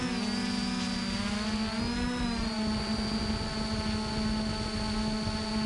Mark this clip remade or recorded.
recorded